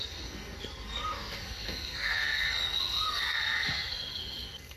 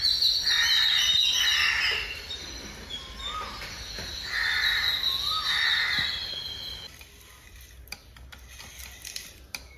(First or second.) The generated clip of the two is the first